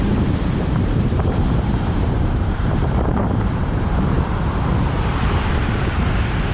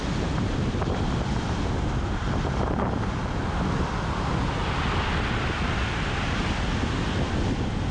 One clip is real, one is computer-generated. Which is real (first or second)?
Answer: second